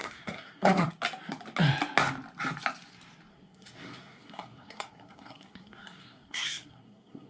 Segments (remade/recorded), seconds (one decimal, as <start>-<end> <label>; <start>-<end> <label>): 0.0-0.9 remade; 0.9-3.3 recorded; 3.3-7.3 remade